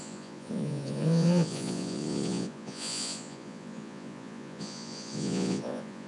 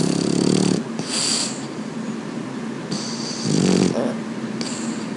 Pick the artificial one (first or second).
first